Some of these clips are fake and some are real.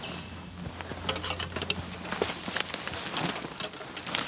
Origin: real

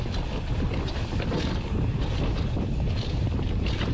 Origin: real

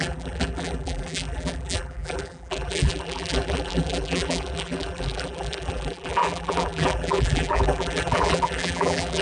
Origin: fake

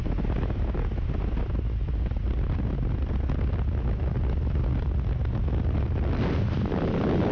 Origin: real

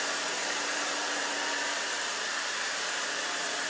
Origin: fake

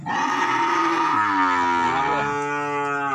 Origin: real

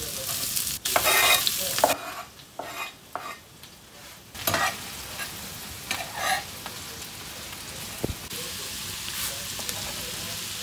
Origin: real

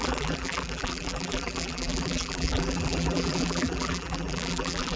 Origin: fake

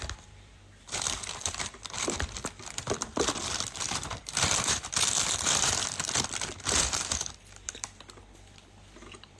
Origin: fake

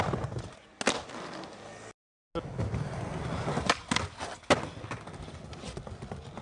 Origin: real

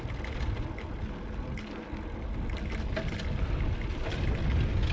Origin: real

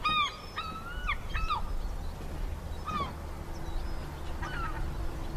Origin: real